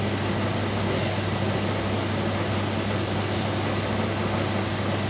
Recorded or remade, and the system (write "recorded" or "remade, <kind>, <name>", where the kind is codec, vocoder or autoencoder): recorded